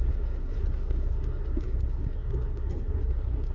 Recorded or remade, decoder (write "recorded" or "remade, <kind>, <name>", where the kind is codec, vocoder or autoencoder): remade, codec, SNAC